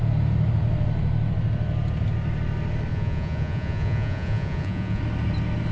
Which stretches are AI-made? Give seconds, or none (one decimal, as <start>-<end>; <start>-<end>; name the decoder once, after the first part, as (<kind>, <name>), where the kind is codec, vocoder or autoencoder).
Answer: 2.9-5.0 (vocoder, Vocos)